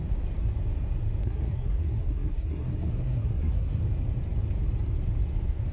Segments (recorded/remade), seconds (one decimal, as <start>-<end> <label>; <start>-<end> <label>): 0.0-1.2 recorded; 1.2-3.8 remade; 3.8-5.7 recorded